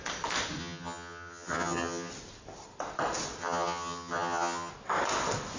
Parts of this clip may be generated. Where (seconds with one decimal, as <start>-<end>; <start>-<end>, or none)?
0.6-2.1; 3.4-4.7